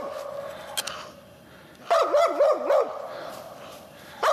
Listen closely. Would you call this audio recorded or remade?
recorded